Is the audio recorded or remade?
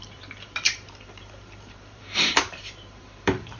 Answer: remade